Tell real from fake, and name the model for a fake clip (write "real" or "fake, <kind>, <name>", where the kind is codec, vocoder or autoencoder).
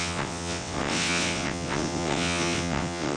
fake, vocoder, WaveNeXt